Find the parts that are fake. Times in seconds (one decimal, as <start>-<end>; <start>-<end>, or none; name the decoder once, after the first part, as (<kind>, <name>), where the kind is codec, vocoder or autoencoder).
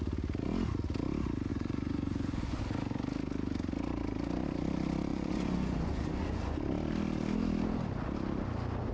1.5-2.6 (vocoder, Vocos); 5.1-6.6